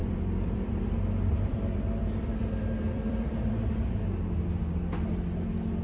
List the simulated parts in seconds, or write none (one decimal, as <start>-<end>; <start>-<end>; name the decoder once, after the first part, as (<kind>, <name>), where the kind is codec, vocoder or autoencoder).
0.0-3.5 (vocoder, BigVGAN v2)